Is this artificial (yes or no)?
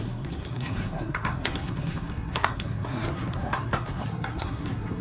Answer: yes